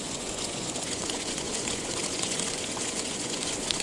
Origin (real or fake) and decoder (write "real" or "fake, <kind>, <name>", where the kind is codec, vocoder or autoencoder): fake, vocoder, Vocos